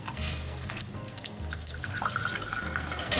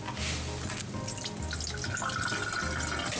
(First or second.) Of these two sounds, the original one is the second